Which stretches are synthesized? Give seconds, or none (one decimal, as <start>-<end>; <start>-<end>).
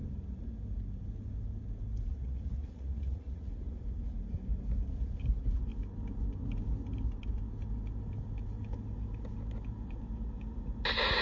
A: 2.1-3.5